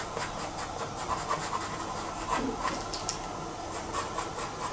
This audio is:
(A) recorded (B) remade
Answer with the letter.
A